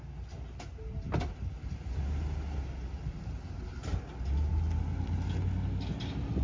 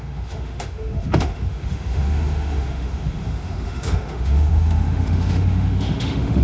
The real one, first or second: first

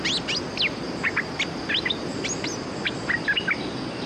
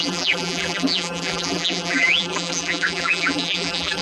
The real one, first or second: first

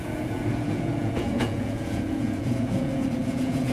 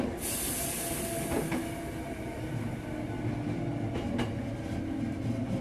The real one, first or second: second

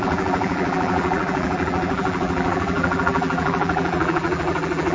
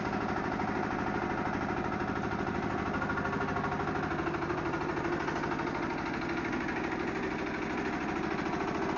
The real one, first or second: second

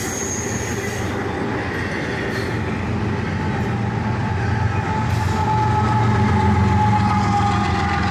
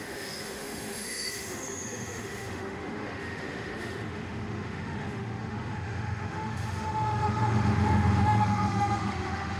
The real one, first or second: first